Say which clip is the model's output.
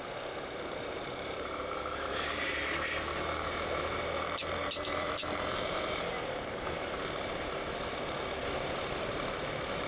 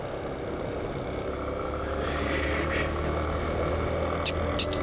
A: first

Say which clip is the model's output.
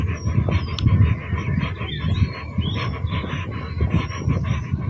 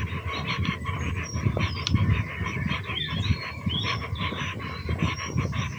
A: second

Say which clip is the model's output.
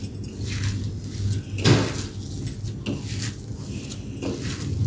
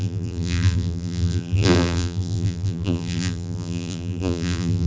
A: second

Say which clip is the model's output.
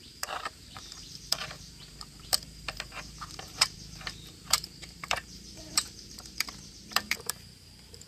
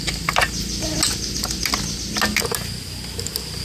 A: first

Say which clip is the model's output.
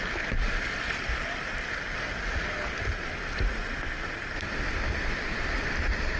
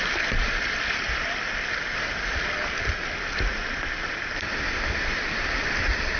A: second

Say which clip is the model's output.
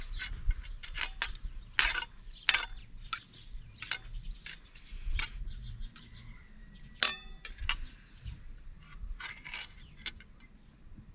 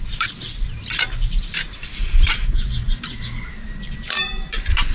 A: second